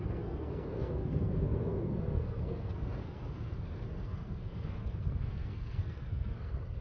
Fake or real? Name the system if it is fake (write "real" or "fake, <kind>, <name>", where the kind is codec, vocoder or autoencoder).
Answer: fake, codec, SNAC